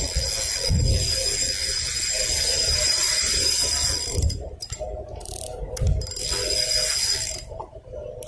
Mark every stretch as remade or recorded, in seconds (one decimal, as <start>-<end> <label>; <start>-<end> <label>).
0.0-8.3 recorded

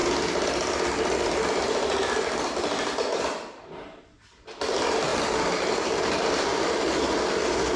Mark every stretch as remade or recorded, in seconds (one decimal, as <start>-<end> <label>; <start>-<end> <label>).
0.0-7.8 recorded

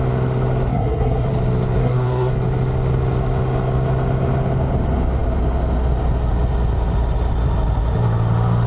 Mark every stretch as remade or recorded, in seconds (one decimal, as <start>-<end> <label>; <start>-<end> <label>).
0.0-0.7 recorded; 0.7-1.3 remade; 1.3-1.8 recorded; 1.8-2.3 remade; 2.3-8.7 recorded

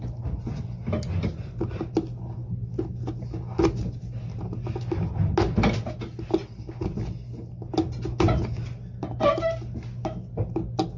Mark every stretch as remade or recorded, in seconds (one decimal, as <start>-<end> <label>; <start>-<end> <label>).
0.0-11.0 recorded

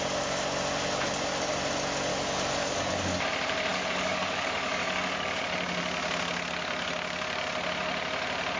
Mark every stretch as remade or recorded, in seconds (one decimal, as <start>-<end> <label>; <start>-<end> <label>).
0.0-2.1 recorded; 2.1-2.9 remade; 2.9-3.7 recorded; 3.7-5.4 remade; 5.4-8.6 recorded

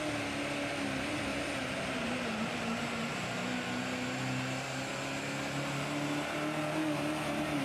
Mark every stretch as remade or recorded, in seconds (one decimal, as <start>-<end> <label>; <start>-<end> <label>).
0.0-1.3 recorded; 1.3-3.0 remade; 3.0-7.6 recorded

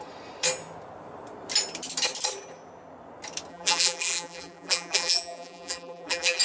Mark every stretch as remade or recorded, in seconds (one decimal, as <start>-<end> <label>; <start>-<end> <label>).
0.0-3.5 recorded; 3.5-6.4 remade